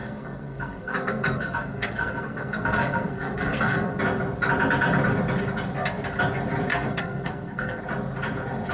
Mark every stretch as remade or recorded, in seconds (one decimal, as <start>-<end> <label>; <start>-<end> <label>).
0.0-4.0 remade; 4.0-6.7 recorded; 6.7-7.8 remade; 7.8-8.7 recorded